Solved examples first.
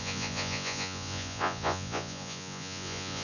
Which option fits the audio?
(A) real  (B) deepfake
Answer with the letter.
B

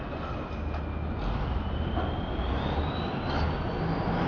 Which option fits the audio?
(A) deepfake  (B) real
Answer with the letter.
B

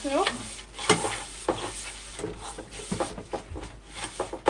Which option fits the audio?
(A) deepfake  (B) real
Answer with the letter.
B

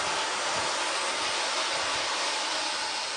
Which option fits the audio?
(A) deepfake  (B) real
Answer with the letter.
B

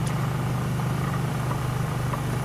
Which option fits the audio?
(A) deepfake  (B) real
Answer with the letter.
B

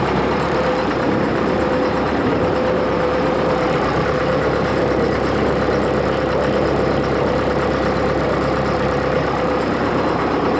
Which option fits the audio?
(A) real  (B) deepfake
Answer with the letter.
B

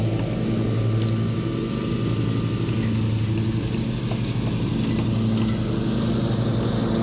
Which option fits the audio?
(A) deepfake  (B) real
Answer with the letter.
B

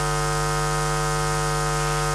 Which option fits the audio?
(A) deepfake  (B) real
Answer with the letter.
B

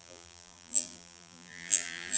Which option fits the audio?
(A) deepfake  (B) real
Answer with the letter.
A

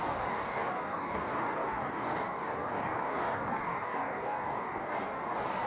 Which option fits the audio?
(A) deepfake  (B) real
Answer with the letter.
A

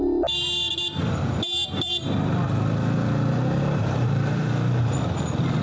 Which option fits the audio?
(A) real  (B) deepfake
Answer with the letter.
A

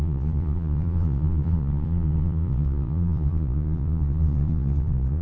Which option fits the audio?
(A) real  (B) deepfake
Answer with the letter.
B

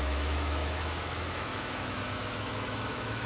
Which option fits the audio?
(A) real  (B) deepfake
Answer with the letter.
B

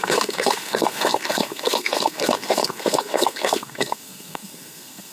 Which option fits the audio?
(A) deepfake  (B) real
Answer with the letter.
A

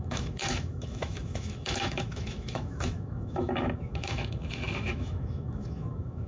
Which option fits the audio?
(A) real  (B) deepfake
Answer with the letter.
B